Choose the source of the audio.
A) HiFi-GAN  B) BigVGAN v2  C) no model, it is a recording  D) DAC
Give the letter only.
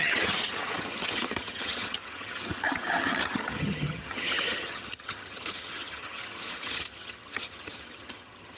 A